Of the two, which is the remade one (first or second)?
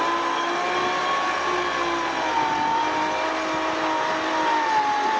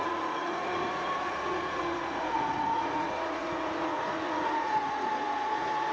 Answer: second